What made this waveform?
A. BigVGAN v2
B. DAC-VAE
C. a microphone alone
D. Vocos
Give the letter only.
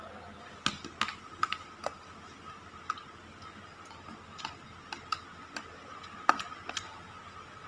C